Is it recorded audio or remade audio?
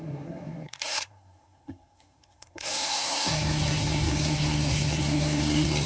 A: remade